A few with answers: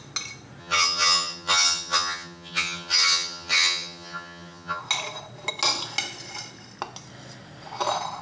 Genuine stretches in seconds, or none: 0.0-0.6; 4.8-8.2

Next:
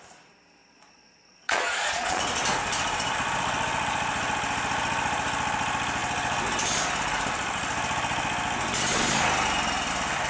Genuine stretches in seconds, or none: 0.0-0.6; 2.2-10.3